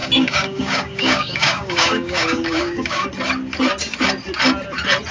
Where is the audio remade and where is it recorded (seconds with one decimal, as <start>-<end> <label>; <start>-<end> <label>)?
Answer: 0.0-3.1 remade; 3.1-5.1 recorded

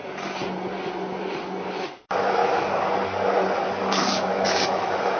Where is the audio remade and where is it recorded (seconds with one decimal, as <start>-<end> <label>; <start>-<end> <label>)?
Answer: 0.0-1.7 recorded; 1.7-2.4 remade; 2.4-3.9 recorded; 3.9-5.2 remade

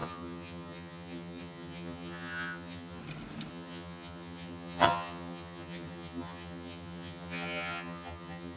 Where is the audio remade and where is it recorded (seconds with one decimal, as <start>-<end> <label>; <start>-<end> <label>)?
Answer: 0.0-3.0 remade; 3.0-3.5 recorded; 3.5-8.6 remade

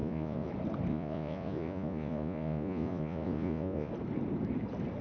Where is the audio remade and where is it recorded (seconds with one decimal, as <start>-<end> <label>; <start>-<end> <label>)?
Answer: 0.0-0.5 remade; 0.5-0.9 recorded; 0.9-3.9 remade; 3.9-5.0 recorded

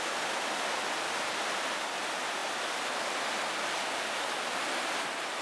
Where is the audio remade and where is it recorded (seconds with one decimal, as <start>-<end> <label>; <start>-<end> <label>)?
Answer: 0.0-5.4 recorded

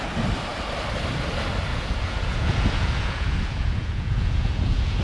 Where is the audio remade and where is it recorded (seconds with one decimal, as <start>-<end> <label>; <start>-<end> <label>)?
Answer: 0.0-1.7 recorded; 1.7-5.0 remade